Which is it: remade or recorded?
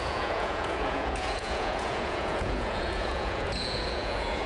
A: remade